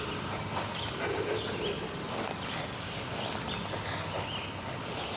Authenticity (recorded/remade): recorded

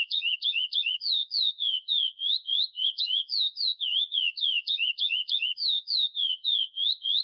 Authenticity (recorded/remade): remade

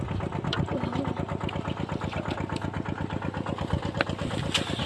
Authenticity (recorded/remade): recorded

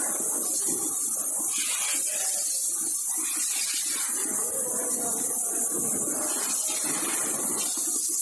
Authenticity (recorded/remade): recorded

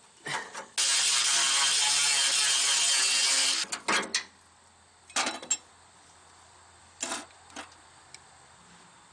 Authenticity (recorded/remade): recorded